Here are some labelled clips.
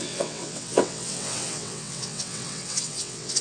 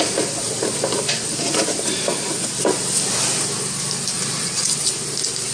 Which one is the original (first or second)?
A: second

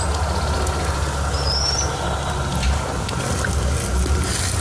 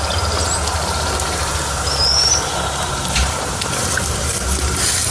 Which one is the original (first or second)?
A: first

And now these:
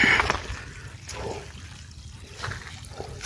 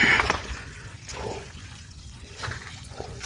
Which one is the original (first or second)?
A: first